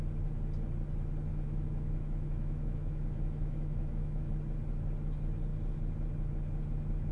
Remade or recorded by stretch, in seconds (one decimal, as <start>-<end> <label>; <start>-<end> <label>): 0.0-1.3 recorded; 1.3-4.3 remade; 4.3-7.1 recorded